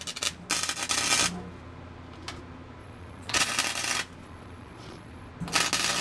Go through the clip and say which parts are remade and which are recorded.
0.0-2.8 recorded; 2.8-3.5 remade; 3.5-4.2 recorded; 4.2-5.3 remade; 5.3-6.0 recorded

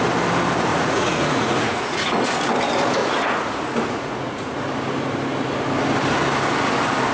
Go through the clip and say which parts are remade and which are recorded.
0.0-0.7 recorded; 0.7-2.1 remade; 2.1-3.0 recorded; 3.0-4.6 remade; 4.6-7.1 recorded

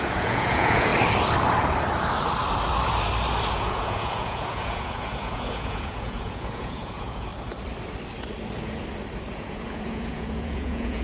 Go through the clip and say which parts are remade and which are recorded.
0.0-0.9 remade; 0.9-3.5 recorded; 3.5-7.3 remade; 7.3-9.3 recorded; 9.3-11.0 remade